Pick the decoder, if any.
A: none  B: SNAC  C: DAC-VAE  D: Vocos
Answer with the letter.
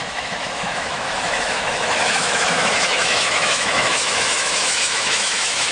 C